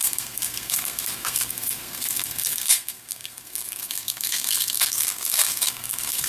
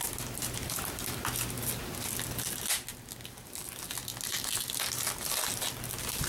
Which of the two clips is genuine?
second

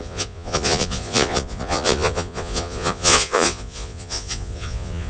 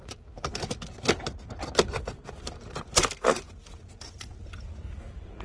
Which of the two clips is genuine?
second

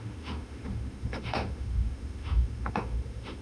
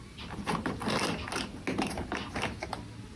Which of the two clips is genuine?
second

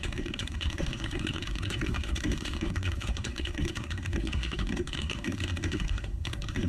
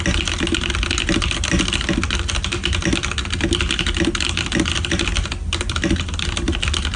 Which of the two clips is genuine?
second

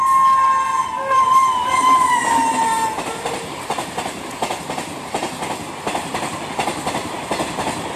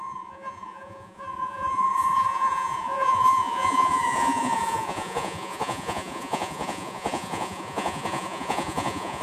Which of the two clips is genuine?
first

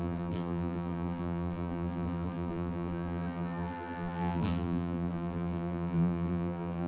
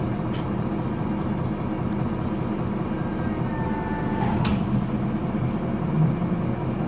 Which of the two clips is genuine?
second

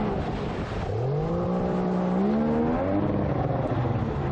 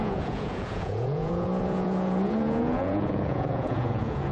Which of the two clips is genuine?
first